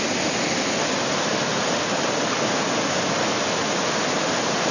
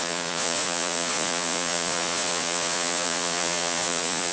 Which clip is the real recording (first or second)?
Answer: first